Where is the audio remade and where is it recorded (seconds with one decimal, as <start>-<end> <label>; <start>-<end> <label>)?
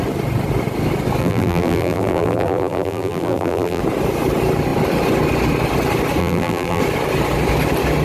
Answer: 0.0-1.2 recorded; 1.2-3.8 remade; 3.8-6.2 recorded; 6.2-6.8 remade; 6.8-8.0 recorded